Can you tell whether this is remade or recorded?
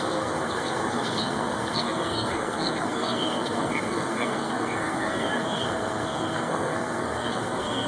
remade